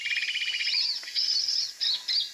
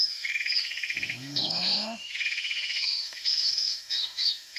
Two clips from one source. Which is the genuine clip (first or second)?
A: first